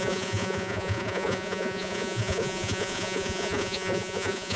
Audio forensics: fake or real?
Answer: fake